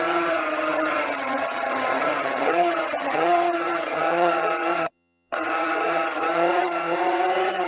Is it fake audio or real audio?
fake